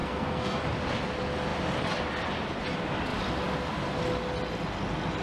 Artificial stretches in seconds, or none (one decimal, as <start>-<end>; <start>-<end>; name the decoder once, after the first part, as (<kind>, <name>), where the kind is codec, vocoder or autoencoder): 0.0-0.6 (codec, SNAC)